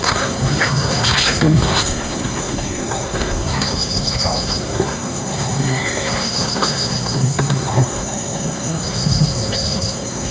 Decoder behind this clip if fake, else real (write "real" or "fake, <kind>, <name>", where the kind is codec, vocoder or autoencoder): fake, codec, SNAC